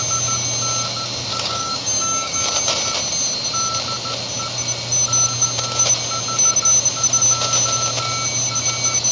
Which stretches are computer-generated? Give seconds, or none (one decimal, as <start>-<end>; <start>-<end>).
1.3-2.4